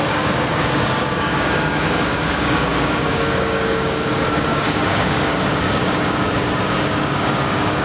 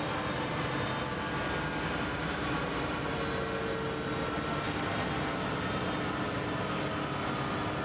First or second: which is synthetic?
first